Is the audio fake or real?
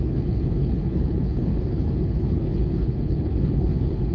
fake